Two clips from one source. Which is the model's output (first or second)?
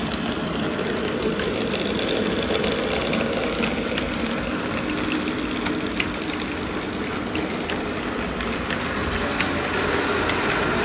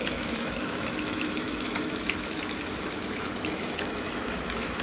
second